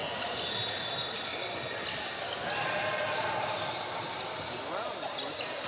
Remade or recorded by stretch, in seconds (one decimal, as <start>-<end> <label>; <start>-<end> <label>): 0.0-5.7 recorded

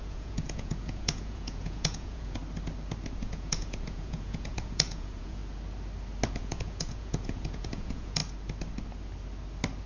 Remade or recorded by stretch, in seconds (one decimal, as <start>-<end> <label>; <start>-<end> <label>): 0.0-2.4 remade; 2.4-3.2 recorded; 3.2-5.4 remade; 5.4-6.3 recorded; 6.3-8.2 remade; 8.2-9.9 recorded